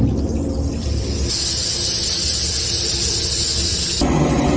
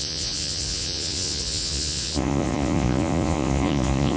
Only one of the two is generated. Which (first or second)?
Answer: second